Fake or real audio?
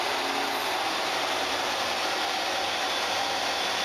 real